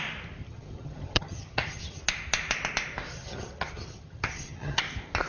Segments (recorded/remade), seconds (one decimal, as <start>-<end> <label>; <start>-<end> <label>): 0.0-0.4 recorded; 0.4-2.0 remade; 2.0-3.1 recorded; 3.1-4.8 remade; 4.8-5.3 recorded